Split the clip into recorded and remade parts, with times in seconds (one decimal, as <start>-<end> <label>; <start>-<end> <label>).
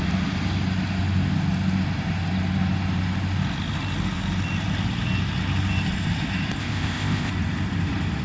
0.0-6.6 recorded; 6.6-7.3 remade; 7.3-8.2 recorded